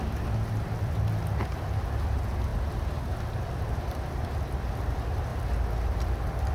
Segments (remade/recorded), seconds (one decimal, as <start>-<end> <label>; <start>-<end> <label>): 0.0-6.5 recorded